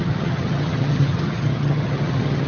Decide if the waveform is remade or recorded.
remade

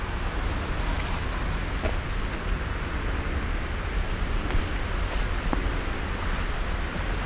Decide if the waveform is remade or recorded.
recorded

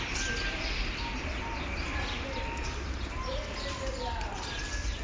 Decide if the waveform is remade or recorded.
recorded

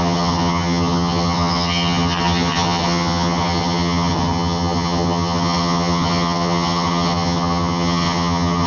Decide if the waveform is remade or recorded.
remade